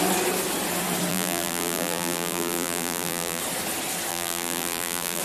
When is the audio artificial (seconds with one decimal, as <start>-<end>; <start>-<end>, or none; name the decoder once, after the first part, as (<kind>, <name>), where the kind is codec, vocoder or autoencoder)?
1.1-3.4 (vocoder, BigVGAN v2); 4.1-5.2